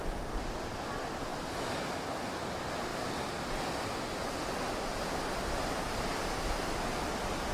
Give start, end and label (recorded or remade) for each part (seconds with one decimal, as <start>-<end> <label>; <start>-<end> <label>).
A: 0.0-7.5 recorded